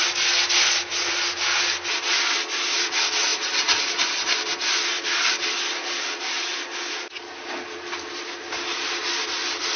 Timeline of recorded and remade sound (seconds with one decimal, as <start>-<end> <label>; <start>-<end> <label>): 0.0-9.8 recorded